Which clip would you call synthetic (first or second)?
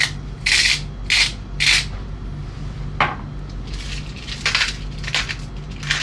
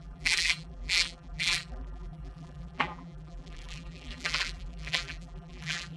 second